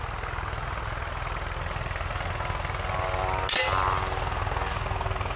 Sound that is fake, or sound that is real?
real